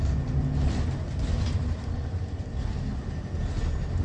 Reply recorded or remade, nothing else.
recorded